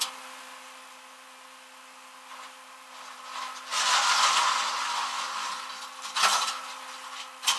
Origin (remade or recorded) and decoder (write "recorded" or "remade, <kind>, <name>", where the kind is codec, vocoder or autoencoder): recorded